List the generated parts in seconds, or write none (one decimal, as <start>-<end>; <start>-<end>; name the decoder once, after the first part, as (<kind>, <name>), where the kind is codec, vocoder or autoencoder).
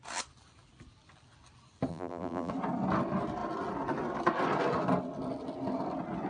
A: 1.9-2.5 (vocoder, BigVGAN v2)